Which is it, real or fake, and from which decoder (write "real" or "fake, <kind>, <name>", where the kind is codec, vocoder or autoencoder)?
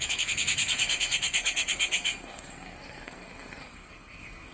fake, codec, SNAC